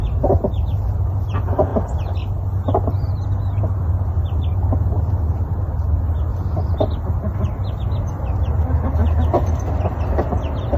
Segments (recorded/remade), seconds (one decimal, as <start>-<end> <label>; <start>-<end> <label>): 0.0-10.8 recorded